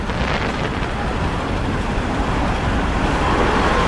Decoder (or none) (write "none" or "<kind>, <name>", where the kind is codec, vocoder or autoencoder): none